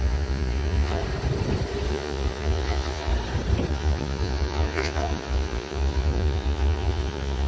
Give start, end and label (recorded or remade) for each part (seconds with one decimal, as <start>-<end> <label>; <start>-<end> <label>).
0.0-1.0 remade; 1.0-1.9 recorded; 1.9-3.1 remade; 3.1-3.7 recorded; 3.7-7.5 remade